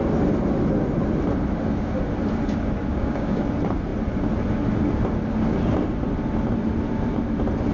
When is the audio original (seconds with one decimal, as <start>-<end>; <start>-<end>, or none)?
0.0-2.9; 3.4-7.7